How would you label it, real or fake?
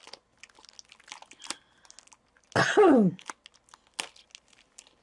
real